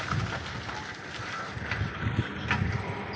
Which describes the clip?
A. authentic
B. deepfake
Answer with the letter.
A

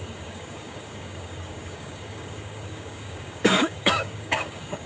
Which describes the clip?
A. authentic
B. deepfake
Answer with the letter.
B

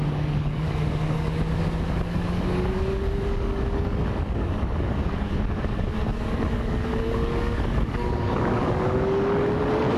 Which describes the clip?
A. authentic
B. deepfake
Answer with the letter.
B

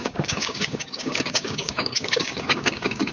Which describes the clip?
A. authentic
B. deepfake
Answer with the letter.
B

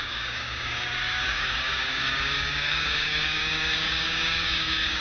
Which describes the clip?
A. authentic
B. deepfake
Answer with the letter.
B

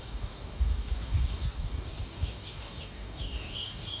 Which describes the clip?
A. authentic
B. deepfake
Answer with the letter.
B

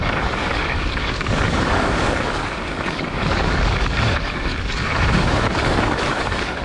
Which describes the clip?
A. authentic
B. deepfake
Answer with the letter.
B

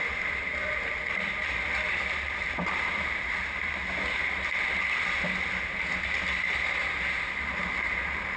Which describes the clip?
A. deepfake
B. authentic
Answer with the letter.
B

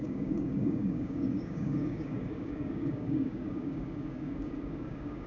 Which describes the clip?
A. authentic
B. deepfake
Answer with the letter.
B